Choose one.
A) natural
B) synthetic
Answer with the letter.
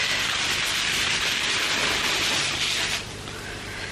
A